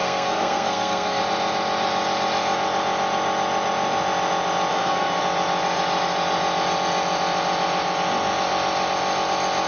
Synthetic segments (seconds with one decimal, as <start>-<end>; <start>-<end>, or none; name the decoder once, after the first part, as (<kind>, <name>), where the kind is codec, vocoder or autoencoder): 0.0-1.2 (codec, SNAC); 4.7-5.2